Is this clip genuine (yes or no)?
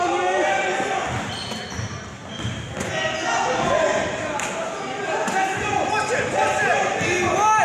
yes